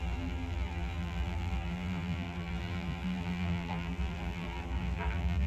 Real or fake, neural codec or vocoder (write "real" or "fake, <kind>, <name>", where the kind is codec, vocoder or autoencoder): fake, vocoder, BigVGAN v2